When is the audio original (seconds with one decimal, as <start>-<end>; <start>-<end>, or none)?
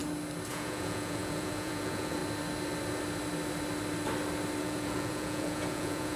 0.0-0.5; 2.2-4.6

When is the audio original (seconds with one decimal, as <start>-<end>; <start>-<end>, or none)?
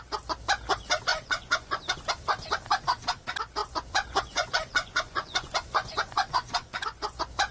0.0-1.1; 1.8-3.6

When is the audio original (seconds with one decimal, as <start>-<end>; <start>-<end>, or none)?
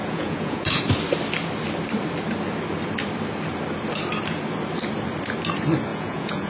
0.8-5.9